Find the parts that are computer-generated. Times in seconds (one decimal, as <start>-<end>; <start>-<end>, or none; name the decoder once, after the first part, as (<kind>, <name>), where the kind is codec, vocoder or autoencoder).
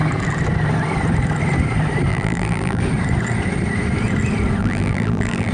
2.1-2.8 (vocoder, BigVGAN v2); 4.6-5.5